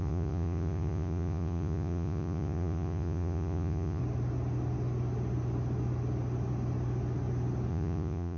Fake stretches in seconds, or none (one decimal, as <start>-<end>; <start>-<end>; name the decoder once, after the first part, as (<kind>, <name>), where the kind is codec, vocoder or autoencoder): 0.0-4.0 (vocoder, Vocos); 7.7-8.4